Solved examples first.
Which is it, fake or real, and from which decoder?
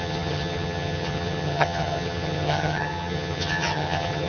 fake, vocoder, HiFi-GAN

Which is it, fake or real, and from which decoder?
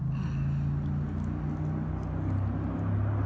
real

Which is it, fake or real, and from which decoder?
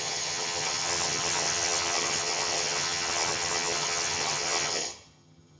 fake, vocoder, HiFi-GAN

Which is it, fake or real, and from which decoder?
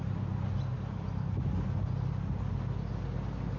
real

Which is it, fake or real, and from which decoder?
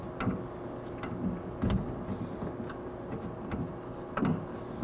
real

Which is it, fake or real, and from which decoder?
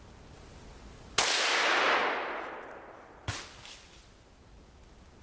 real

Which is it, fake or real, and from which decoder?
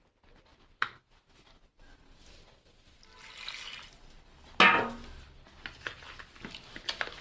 real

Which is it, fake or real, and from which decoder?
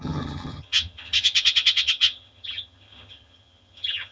fake, vocoder, HiFi-GAN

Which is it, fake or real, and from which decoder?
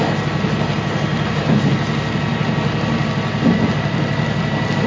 real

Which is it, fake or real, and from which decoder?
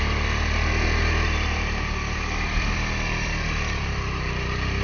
real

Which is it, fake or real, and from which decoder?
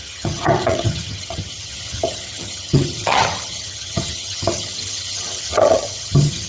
fake, vocoder, HiFi-GAN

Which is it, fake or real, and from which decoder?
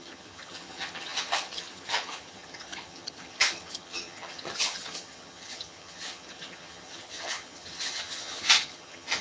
fake, vocoder, HiFi-GAN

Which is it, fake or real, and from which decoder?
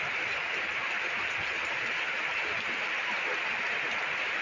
real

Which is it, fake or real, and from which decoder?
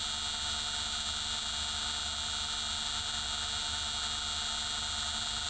real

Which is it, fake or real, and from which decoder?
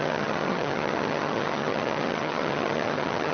fake, vocoder, HiFi-GAN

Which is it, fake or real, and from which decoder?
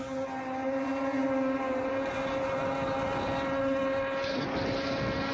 real